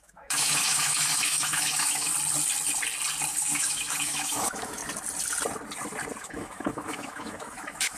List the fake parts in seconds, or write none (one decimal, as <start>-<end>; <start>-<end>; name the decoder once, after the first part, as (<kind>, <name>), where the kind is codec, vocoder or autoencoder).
0.0-2.1 (autoencoder, DAC-VAE); 3.4-4.8; 6.2-8.0